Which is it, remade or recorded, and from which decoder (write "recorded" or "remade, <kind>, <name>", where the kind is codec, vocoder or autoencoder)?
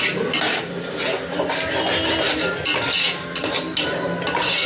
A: recorded